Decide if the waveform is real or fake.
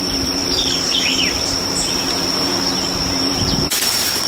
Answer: fake